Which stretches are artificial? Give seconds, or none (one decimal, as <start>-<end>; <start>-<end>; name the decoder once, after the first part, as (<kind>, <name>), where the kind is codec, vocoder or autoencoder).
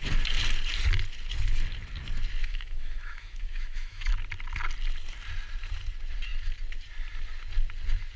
2.4-4.1 (autoencoder, DAC-VAE)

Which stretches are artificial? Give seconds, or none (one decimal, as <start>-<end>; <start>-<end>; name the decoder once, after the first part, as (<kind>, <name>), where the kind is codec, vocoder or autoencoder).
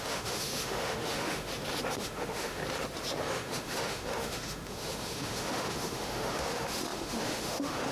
0.0-1.5 (autoencoder, DAC-VAE); 2.0-2.6; 3.3-7.9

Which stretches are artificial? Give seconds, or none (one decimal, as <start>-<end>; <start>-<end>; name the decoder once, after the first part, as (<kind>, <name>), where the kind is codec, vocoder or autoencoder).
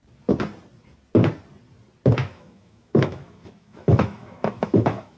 2.2-5.2 (autoencoder, DAC-VAE)